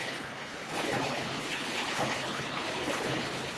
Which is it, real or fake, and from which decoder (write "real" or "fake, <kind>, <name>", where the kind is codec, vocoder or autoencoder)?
fake, codec, HILCodec